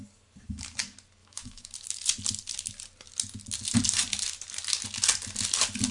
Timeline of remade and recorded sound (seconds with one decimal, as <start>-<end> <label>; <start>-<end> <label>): 0.0-1.2 recorded; 1.2-1.7 remade; 1.7-5.9 recorded